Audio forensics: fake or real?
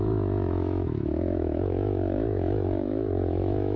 fake